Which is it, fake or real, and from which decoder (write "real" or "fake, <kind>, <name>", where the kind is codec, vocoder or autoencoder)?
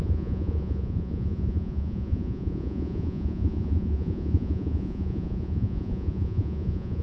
fake, vocoder, Vocos